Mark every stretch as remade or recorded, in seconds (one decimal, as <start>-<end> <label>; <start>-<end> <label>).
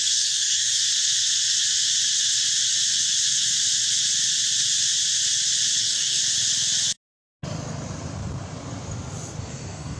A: 0.0-0.8 remade; 0.8-5.8 recorded; 5.8-6.2 remade; 6.2-9.4 recorded; 9.4-10.0 remade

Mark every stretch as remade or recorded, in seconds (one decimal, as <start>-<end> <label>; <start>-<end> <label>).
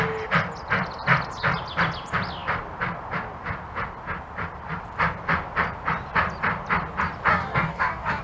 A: 0.0-7.3 recorded; 7.3-8.2 remade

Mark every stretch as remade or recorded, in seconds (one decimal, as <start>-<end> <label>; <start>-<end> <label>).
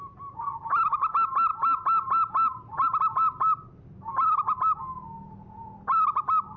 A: 0.0-6.6 recorded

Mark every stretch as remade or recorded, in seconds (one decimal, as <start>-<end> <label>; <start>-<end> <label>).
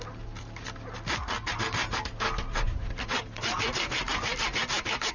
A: 0.0-5.1 recorded